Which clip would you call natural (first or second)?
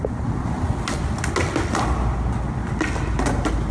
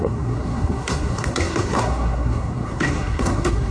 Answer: first